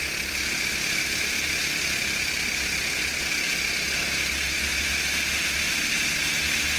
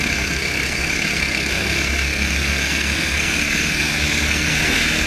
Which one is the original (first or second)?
first